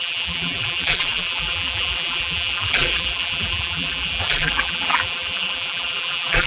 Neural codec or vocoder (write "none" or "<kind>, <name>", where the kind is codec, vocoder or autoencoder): vocoder, BigVGAN v2